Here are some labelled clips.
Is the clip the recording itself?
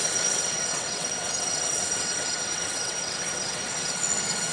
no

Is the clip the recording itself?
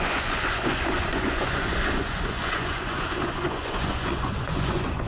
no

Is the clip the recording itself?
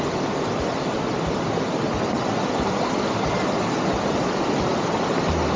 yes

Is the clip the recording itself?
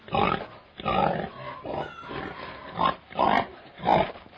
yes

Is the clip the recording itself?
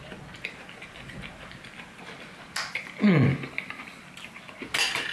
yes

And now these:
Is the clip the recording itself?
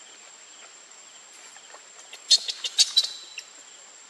yes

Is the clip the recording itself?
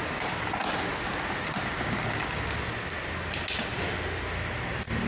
yes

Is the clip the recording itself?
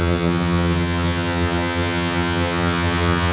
no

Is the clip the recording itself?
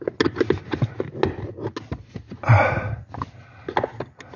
yes